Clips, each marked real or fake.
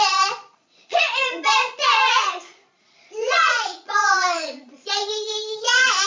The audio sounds fake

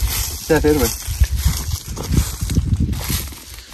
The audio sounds real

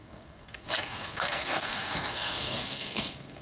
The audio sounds fake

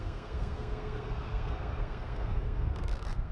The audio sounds fake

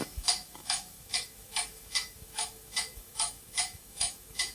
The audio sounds fake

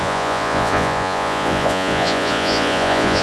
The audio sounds fake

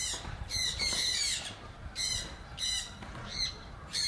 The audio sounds fake